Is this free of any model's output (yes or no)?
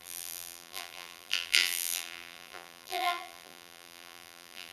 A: no